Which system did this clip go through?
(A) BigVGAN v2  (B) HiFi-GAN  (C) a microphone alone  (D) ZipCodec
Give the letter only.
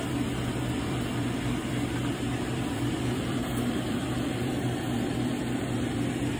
A